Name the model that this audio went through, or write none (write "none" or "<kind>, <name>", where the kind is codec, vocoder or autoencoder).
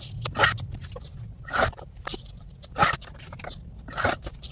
none